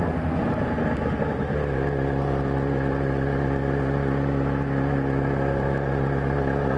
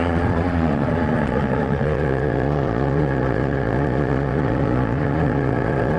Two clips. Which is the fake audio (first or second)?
second